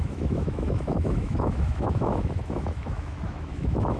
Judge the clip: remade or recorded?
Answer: remade